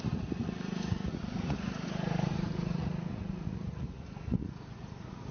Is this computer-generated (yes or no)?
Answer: yes